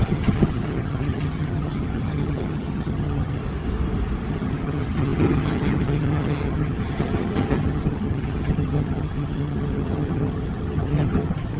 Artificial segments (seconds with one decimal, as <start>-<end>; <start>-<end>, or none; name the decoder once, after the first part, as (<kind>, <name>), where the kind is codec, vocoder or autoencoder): 0.0-3.4 (vocoder, HiFi-GAN); 4.3-11.6